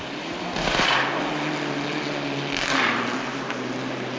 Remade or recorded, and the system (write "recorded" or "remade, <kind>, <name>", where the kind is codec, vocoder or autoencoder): recorded